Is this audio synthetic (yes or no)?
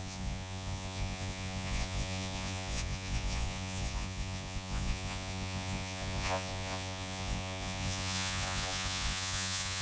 yes